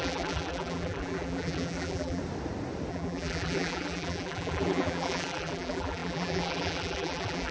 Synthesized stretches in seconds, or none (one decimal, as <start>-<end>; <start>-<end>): 0.0-2.2; 2.9-7.5